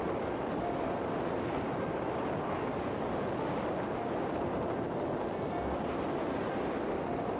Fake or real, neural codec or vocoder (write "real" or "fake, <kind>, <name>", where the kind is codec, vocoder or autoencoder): real